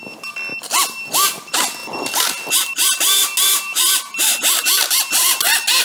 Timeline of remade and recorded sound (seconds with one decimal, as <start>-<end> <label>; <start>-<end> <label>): 0.0-5.8 recorded